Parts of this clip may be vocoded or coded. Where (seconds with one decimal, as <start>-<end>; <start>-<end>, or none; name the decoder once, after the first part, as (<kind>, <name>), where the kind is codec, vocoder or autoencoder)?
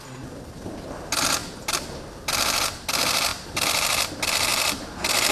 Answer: 3.3-4.1 (vocoder, BigVGAN v2); 4.5-5.3